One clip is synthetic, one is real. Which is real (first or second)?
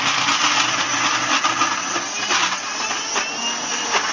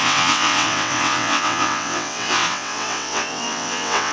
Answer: first